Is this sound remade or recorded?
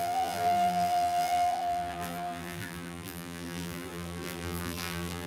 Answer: remade